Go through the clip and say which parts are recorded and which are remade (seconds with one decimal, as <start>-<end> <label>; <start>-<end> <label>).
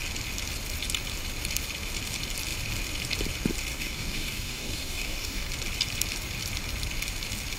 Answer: 0.0-3.7 recorded; 3.7-5.5 remade; 5.5-7.6 recorded